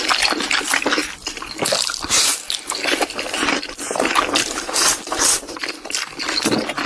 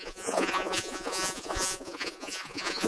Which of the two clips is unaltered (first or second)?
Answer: first